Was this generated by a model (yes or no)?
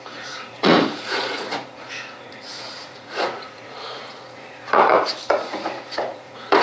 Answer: yes